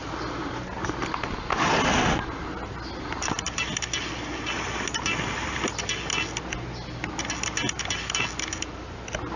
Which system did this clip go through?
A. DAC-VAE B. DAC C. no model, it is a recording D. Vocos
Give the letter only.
C